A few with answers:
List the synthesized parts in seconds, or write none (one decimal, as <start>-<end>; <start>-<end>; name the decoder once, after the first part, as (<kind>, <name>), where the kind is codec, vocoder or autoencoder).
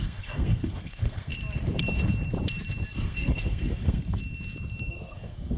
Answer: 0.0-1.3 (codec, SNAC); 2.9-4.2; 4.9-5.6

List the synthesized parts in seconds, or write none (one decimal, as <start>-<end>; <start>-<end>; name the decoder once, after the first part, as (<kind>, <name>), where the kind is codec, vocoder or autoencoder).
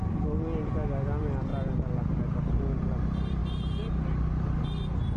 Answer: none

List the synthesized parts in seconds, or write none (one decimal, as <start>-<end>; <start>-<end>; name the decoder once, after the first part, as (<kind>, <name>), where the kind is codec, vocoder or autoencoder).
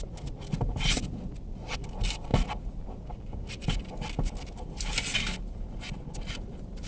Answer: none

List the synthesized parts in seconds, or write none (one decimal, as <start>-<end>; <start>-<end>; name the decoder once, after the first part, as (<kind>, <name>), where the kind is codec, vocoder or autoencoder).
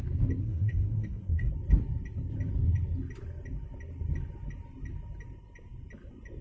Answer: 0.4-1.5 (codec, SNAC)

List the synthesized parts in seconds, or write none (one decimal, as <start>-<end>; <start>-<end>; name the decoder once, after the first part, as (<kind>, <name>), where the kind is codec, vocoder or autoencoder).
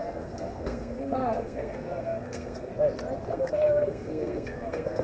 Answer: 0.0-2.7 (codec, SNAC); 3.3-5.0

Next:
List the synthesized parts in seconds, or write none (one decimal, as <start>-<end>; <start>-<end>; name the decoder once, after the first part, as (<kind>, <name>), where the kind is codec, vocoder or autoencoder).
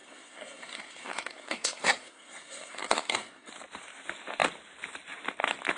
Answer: 0.0-3.5 (codec, SNAC)